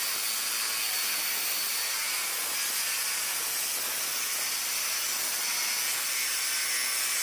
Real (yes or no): yes